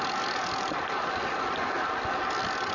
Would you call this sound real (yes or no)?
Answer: yes